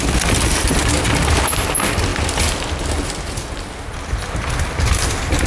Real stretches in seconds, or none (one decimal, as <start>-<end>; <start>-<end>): 0.0-5.5